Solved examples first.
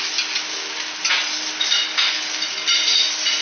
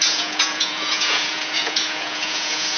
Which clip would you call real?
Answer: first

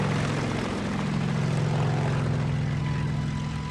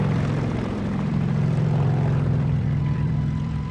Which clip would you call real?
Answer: first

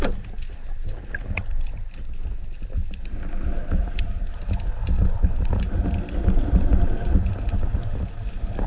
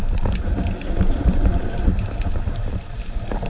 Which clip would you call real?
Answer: first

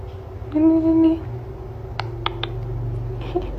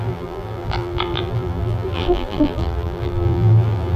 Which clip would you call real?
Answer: first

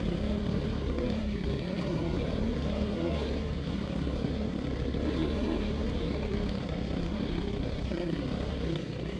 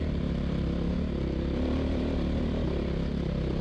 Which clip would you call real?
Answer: second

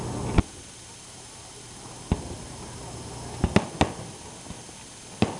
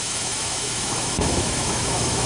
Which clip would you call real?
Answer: first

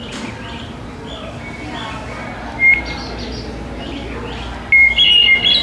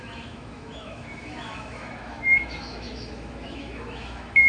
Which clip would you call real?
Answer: first